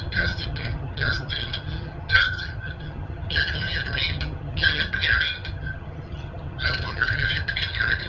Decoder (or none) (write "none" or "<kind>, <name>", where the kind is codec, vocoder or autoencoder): vocoder, HiFi-GAN